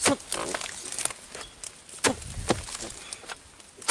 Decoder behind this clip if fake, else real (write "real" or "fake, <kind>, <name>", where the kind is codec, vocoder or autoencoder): real